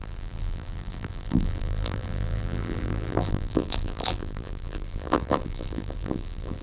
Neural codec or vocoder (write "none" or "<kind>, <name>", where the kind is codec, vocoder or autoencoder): vocoder, BigVGAN v2